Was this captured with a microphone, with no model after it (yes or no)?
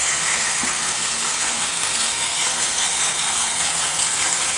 no